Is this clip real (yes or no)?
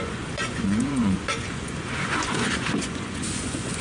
no